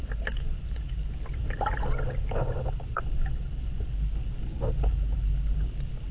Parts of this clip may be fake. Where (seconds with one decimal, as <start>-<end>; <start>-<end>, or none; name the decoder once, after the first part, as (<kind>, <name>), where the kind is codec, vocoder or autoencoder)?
0.0-0.9 (vocoder, BigVGAN v2); 1.4-3.9